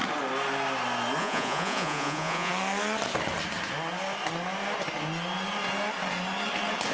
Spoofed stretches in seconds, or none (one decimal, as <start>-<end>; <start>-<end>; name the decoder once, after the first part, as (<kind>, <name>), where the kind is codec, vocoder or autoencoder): 1.2-2.5 (vocoder, Vocos)